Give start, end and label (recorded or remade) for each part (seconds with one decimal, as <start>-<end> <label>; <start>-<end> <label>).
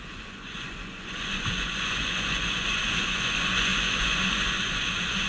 0.0-5.3 remade